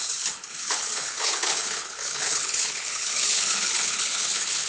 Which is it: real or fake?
fake